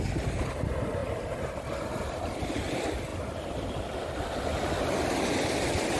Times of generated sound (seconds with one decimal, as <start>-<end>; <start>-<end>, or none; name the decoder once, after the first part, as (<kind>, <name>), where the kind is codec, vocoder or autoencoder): 1.0-1.6 (vocoder, BigVGAN v2); 3.1-4.8